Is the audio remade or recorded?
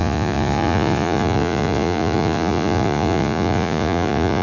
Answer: remade